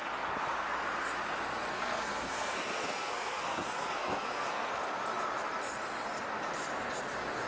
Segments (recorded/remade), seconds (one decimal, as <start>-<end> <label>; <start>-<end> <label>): 0.0-1.7 recorded; 1.7-4.7 remade; 4.7-7.5 recorded